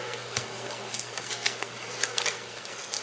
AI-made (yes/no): yes